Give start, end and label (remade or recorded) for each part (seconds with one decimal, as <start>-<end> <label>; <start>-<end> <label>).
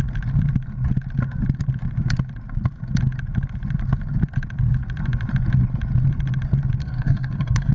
0.0-6.8 recorded; 6.8-7.7 remade